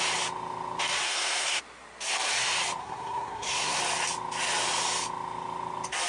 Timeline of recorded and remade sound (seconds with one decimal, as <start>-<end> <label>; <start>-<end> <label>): 0.0-1.0 recorded; 1.0-1.6 remade; 1.6-2.8 recorded; 2.8-3.8 remade; 3.8-6.1 recorded